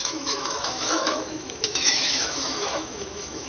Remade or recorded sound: remade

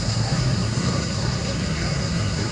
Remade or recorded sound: remade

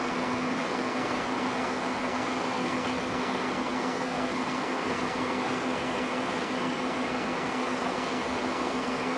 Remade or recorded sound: remade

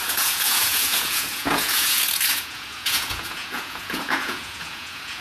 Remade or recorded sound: remade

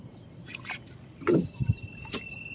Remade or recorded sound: recorded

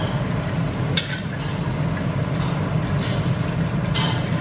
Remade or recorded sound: recorded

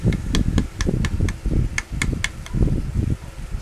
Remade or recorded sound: recorded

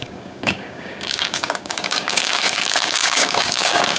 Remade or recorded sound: remade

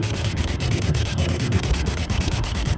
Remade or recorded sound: remade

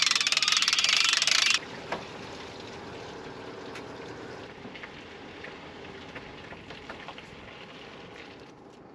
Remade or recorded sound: recorded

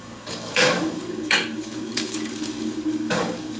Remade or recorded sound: remade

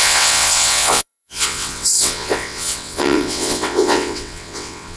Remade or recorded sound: remade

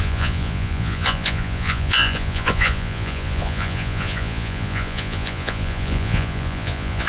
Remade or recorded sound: remade